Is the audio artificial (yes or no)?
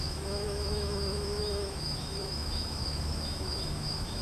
yes